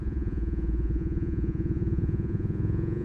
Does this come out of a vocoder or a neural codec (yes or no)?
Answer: yes